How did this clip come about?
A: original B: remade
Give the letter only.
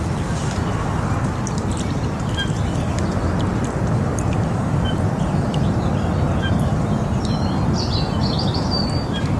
A